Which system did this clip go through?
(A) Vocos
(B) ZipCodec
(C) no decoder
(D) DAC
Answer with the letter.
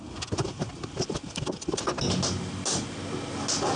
C